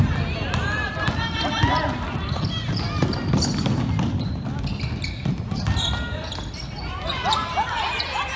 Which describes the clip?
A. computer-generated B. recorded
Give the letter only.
B